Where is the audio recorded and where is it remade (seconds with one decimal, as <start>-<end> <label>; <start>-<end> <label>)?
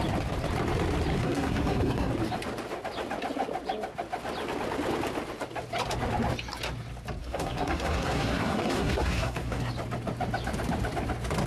0.0-1.1 recorded; 1.1-2.1 remade; 2.1-7.2 recorded; 7.2-9.7 remade; 9.7-11.5 recorded